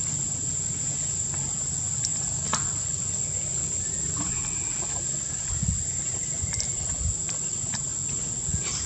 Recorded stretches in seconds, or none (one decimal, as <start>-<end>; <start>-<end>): 0.0-8.9